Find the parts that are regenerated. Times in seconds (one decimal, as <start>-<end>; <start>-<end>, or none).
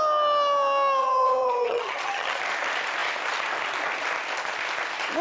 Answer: 1.0-2.4